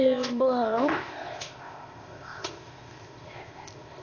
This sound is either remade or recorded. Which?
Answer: remade